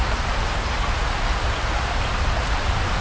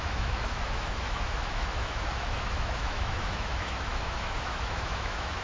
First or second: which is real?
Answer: first